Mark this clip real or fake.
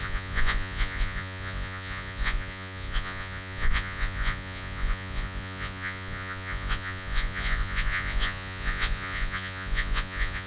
fake